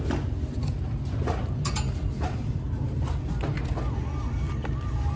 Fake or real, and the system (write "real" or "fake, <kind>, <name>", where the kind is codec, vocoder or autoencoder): real